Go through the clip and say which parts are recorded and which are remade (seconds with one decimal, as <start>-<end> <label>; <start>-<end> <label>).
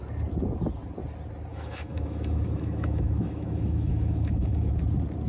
0.0-1.5 recorded; 1.5-4.7 remade; 4.7-5.3 recorded